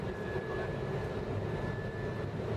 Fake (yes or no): no